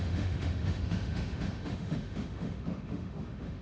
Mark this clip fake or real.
fake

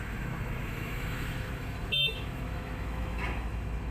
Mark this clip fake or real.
fake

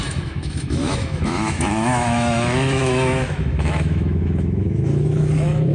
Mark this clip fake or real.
fake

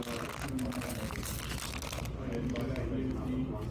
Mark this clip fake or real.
real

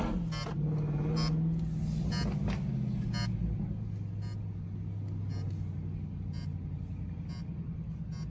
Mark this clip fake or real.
real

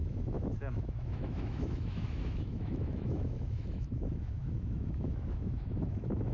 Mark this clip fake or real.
fake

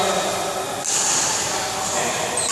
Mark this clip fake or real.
real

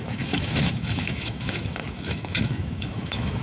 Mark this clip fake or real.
fake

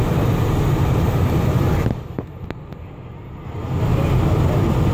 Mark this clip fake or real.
real